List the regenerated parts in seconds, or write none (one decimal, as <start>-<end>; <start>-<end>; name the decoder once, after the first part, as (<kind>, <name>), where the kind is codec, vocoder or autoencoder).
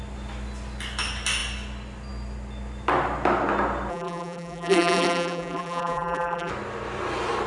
3.9-6.5 (vocoder, BigVGAN v2)